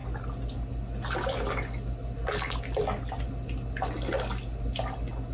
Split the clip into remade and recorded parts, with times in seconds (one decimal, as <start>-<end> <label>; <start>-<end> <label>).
0.0-5.3 recorded